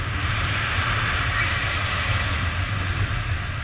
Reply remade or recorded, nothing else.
recorded